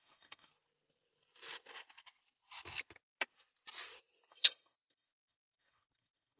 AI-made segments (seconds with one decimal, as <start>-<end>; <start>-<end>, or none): 0.0-0.5; 4.3-6.4